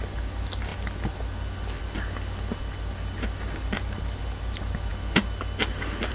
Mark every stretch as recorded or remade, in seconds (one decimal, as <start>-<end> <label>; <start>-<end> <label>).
0.0-6.1 recorded